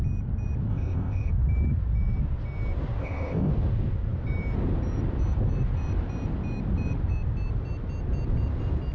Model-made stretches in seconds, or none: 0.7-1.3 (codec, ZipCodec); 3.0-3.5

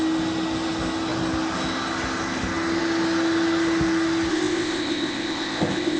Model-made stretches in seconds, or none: 4.3-6.0 (codec, ZipCodec)

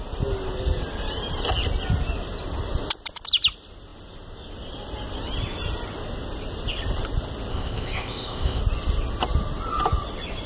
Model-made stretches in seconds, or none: 7.5-8.6 (codec, ZipCodec)

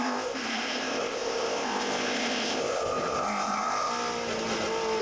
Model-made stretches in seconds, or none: 0.0-3.9 (codec, ZipCodec)

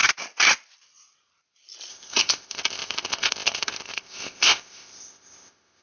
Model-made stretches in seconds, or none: 1.9-5.8 (codec, ZipCodec)